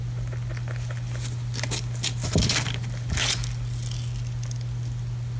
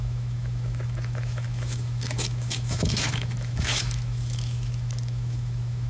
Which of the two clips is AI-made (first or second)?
second